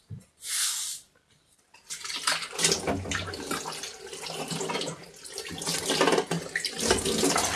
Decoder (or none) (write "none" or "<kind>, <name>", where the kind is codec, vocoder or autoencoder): none